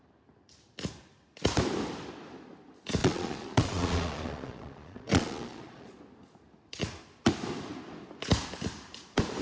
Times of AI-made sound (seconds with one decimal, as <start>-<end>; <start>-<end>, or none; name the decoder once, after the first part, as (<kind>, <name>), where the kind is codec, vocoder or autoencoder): 3.0-6.0 (vocoder, Vocos)